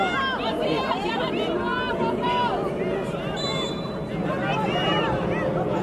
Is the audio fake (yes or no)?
no